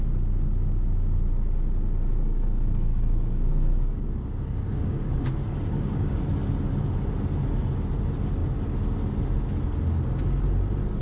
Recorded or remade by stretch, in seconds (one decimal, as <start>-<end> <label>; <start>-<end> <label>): 0.0-2.1 recorded; 2.1-6.2 remade; 6.2-11.0 recorded